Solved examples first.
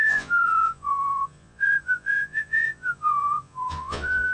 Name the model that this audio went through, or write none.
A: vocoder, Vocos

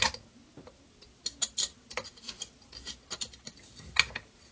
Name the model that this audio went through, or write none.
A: none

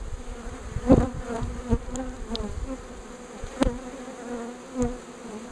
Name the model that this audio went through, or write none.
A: none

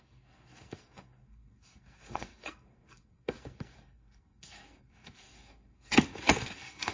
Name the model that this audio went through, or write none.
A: codec, SNAC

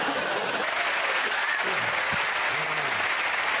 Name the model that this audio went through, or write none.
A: none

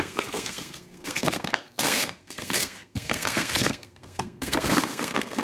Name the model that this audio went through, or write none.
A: codec, SNAC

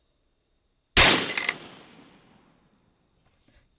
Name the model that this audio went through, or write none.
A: none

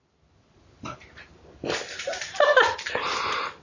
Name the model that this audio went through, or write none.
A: none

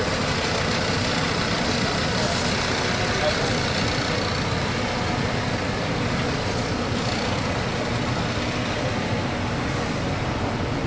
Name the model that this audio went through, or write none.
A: none